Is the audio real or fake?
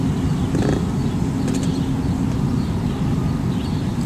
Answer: real